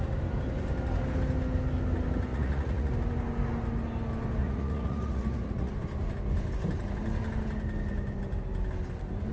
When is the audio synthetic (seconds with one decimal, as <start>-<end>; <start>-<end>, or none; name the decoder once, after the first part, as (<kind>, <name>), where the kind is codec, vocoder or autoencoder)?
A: 2.3-2.9 (vocoder, Vocos); 4.4-5.7